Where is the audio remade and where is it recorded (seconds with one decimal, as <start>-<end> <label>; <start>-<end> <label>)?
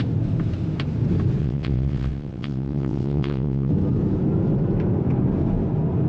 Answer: 0.0-1.4 recorded; 1.4-3.7 remade; 3.7-6.1 recorded